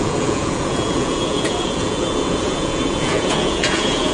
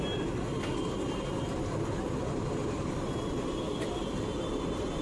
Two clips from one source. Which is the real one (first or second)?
second